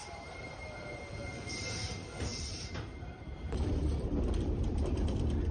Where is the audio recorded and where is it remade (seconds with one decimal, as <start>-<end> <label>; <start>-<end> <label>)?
0.0-5.5 remade